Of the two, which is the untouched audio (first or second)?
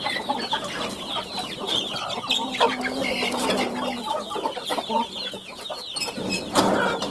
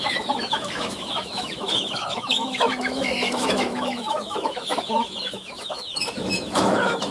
first